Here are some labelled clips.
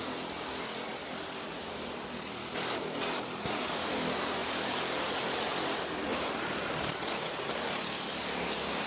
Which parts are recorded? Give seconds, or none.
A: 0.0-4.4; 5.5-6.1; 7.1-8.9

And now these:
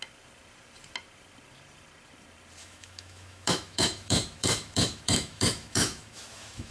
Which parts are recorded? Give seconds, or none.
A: 0.0-2.6

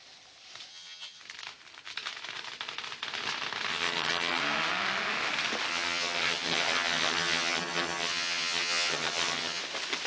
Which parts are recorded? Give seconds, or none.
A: 0.0-0.7; 1.2-3.7; 4.4-5.7; 9.6-10.1